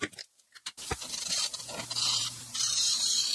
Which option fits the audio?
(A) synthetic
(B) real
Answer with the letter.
A